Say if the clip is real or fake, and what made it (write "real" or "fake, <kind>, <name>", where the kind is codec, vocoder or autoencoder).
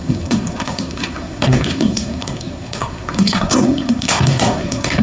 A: fake, codec, SNAC